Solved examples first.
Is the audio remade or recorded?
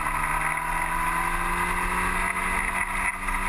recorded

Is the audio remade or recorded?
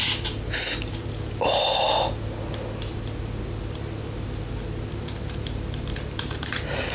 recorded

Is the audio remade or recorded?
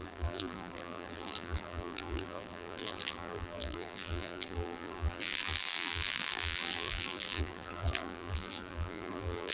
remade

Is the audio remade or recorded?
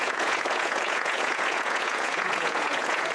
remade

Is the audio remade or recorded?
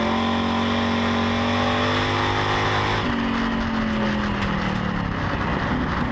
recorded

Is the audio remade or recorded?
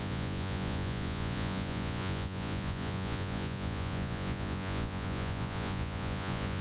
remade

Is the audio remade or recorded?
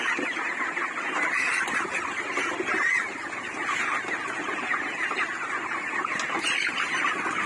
recorded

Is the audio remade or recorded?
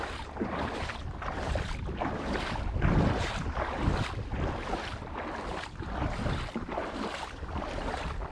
recorded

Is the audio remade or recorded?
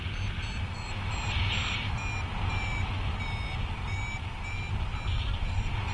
recorded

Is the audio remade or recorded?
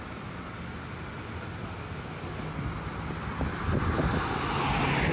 recorded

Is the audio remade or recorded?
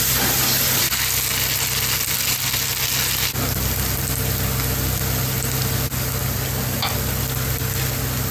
recorded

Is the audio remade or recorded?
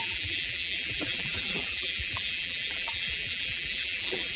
remade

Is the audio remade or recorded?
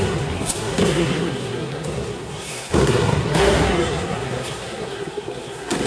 remade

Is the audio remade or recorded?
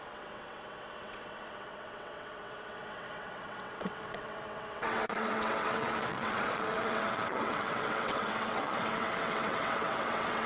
remade